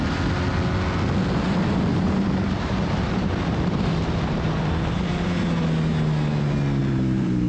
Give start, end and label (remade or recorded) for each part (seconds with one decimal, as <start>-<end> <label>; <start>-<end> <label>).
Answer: 0.0-1.9 recorded; 1.9-5.4 remade; 5.4-6.8 recorded; 6.8-7.5 remade